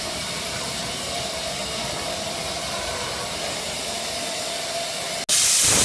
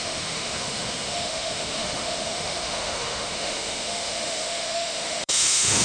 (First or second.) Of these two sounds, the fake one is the second